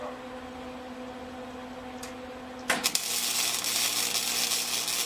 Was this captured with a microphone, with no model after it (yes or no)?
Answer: yes